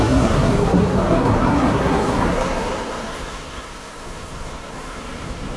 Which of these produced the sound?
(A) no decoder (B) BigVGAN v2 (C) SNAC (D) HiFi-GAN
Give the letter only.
C